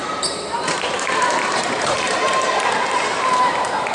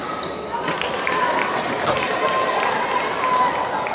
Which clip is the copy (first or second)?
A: first